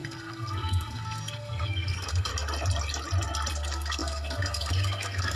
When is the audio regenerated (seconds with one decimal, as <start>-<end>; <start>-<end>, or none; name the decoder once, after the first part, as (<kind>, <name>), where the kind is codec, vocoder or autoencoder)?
0.0-2.3 (codec, SNAC); 3.5-5.4